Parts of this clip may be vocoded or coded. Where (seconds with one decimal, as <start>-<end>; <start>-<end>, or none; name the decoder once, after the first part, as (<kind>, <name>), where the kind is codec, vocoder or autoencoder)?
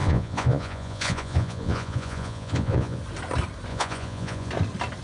0.0-3.0 (vocoder, Vocos); 3.7-4.5